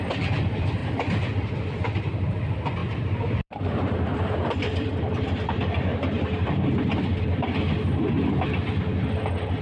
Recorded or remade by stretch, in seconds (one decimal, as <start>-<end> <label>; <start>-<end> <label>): 0.0-2.8 recorded; 2.8-6.7 remade; 6.7-9.6 recorded